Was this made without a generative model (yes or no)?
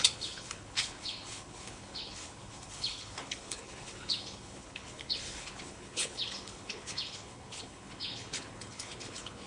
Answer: no